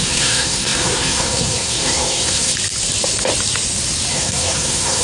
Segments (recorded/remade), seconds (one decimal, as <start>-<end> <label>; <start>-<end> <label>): 0.0-2.5 remade; 2.5-4.1 recorded; 4.1-5.0 remade